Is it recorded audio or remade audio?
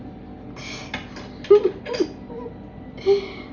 recorded